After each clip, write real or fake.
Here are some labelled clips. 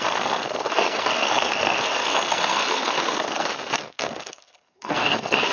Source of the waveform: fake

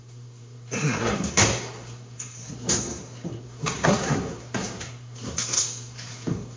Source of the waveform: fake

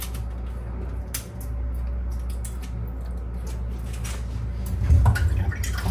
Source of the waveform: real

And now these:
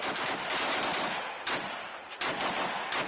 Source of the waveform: real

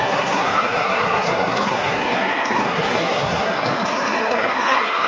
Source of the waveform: fake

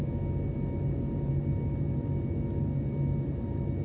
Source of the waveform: real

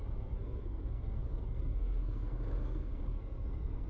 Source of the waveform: fake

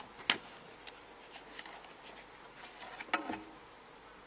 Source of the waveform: real